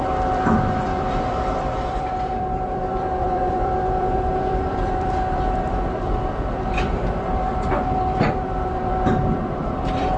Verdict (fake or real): fake